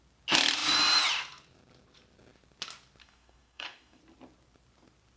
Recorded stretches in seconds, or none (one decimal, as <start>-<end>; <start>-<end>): 0.0-3.0; 4.0-5.2